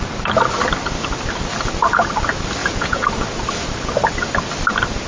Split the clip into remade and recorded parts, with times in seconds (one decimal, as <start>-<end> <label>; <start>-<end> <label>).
0.0-2.6 recorded; 2.6-3.1 remade; 3.1-5.1 recorded